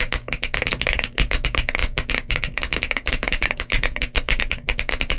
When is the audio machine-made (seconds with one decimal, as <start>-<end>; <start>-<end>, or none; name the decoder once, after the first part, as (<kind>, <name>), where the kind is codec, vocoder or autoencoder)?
0.0-5.2 (codec, DAC)